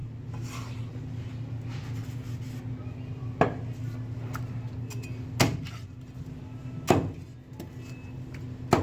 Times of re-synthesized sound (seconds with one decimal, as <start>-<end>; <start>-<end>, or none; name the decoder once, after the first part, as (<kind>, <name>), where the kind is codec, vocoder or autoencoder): none